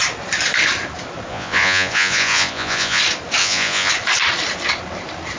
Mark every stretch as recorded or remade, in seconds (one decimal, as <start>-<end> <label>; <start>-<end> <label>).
0.0-1.3 recorded; 1.3-3.0 remade; 3.0-3.4 recorded; 3.4-3.9 remade; 3.9-5.4 recorded